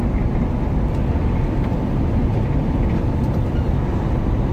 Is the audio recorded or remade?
recorded